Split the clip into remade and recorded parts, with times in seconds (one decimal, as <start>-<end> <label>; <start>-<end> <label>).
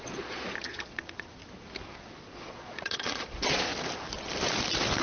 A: 0.0-1.4 remade; 1.4-2.1 recorded; 2.1-3.7 remade; 3.7-5.0 recorded